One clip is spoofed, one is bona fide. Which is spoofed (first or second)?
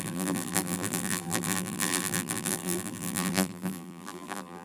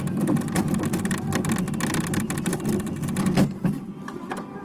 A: first